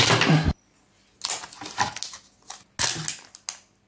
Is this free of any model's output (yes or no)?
yes